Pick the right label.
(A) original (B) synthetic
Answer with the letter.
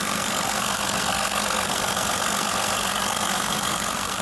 B